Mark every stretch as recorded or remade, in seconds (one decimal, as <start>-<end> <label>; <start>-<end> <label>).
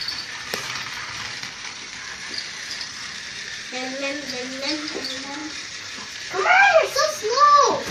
0.0-7.9 remade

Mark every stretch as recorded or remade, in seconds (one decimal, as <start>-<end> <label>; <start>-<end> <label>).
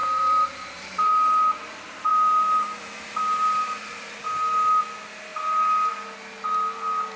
0.0-1.1 remade; 1.1-2.1 recorded; 2.1-4.2 remade; 4.2-7.2 recorded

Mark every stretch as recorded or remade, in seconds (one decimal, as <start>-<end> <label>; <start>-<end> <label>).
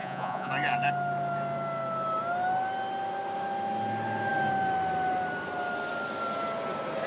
0.0-0.5 remade; 0.5-7.1 recorded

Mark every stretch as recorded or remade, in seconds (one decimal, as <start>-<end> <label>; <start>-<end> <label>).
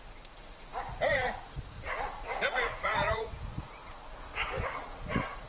0.0-5.5 remade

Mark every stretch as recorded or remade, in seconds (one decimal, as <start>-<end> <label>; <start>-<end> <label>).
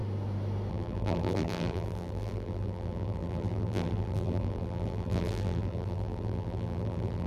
0.0-0.7 recorded; 0.7-7.3 remade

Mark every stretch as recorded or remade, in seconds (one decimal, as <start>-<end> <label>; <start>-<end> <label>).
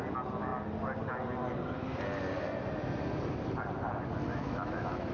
0.0-4.3 recorded; 4.3-5.1 remade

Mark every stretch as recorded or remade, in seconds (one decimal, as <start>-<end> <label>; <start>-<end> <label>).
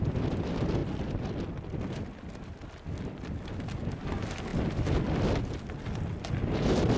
0.0-7.0 recorded